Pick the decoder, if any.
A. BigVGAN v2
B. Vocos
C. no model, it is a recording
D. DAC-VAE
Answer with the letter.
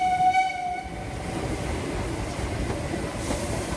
C